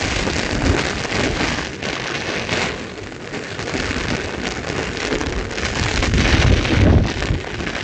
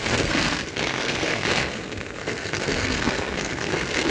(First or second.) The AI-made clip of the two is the second